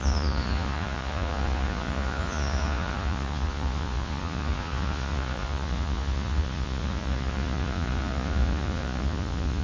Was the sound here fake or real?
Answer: fake